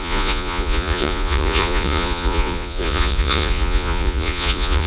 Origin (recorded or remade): remade